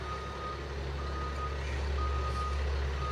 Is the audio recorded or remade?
recorded